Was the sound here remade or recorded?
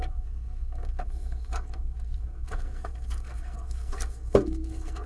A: remade